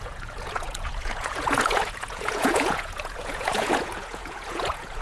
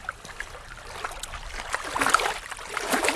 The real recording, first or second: second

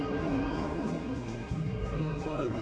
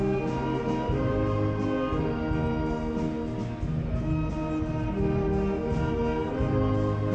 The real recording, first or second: second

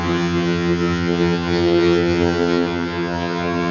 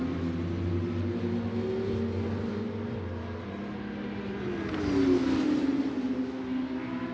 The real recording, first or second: second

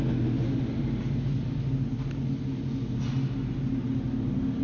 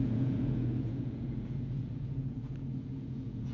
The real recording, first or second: first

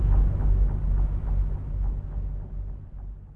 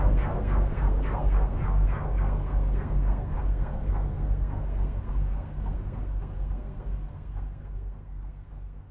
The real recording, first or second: first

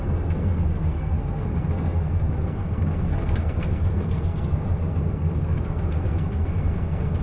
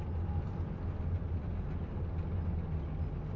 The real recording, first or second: second